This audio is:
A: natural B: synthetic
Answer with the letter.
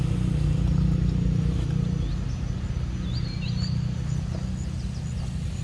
A